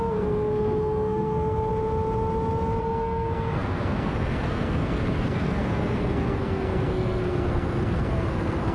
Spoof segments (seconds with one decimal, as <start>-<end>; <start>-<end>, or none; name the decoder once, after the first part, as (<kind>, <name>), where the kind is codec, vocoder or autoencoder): 0.0-1.7 (codec, SNAC); 2.8-8.7